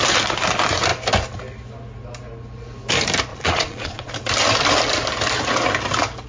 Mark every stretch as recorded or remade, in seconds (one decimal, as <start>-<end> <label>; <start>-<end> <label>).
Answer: 0.0-3.3 recorded; 3.3-4.1 remade; 4.1-6.3 recorded